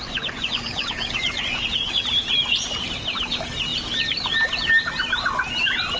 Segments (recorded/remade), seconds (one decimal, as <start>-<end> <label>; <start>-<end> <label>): 0.0-2.0 remade; 2.0-6.0 recorded